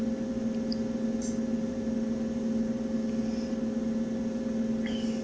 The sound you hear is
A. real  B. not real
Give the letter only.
A